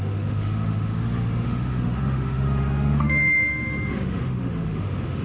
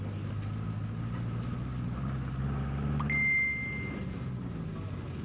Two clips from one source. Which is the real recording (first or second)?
second